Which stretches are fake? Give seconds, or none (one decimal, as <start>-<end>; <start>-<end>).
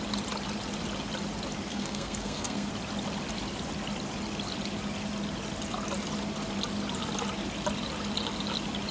1.7-2.7